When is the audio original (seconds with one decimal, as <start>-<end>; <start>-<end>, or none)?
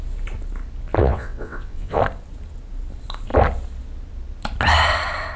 0.0-1.0; 2.0-5.4